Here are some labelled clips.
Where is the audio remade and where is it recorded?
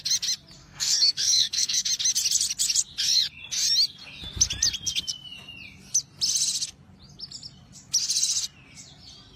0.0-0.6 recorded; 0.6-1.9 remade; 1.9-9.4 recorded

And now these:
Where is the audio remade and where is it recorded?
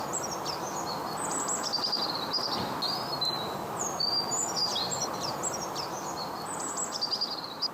0.0-4.7 recorded; 4.7-7.7 remade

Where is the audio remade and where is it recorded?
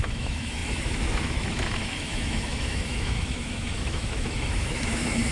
0.0-5.3 remade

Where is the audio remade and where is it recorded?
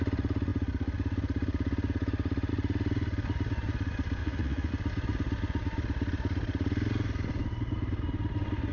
0.0-4.2 recorded; 4.2-4.7 remade; 4.7-8.7 recorded